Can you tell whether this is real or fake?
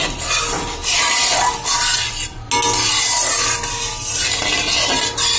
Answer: real